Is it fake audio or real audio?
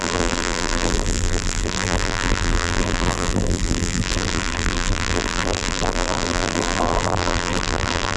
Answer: fake